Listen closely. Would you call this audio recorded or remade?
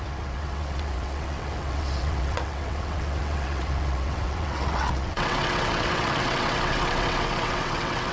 remade